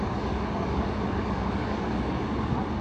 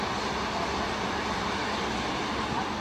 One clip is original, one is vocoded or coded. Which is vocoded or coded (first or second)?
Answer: first